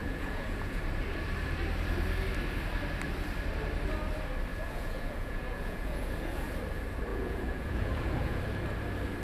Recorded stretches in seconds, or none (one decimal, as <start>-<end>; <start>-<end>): 0.8-4.5; 6.5-7.1; 8.4-9.2